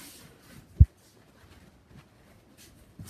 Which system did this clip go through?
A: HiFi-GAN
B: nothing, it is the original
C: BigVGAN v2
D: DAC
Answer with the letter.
B